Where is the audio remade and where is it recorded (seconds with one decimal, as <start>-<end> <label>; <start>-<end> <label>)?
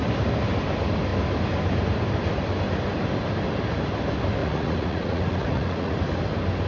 0.0-4.4 recorded; 4.4-6.0 remade; 6.0-6.7 recorded